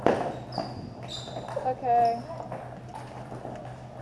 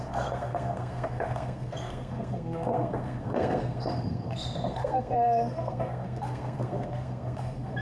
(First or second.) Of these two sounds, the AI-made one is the second